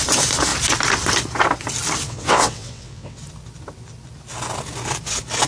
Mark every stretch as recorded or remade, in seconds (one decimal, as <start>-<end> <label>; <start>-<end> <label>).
0.0-2.0 recorded; 2.0-3.2 remade; 3.2-5.5 recorded